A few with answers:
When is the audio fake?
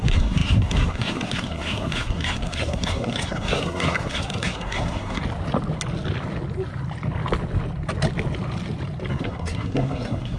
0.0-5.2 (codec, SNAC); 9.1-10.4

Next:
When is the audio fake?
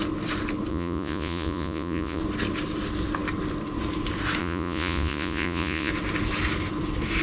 0.7-2.2 (vocoder, Vocos); 4.4-5.9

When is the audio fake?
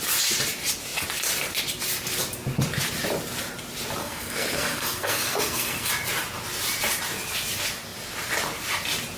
4.0-5.9 (codec, SNAC)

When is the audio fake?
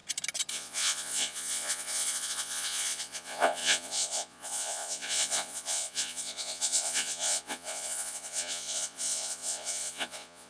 0.5-10.5 (vocoder, Vocos)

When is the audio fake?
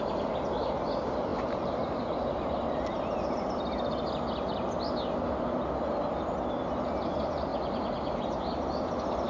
none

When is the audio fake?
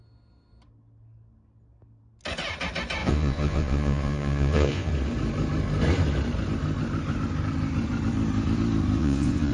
3.0-4.9 (vocoder, Vocos); 9.0-9.5